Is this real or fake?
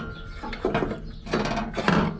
real